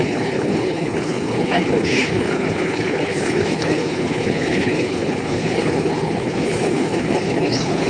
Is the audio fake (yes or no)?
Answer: yes